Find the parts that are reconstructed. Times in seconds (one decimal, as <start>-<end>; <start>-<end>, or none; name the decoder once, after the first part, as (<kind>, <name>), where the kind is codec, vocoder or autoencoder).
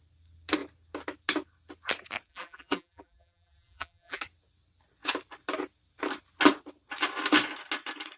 2.3-4.2 (vocoder, BigVGAN v2)